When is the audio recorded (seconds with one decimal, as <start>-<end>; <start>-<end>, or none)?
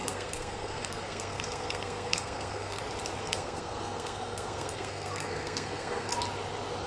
2.8-3.2; 6.1-6.9